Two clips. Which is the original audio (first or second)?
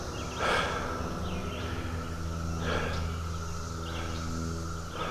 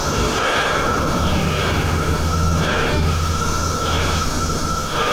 first